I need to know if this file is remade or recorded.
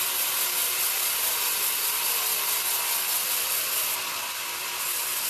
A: recorded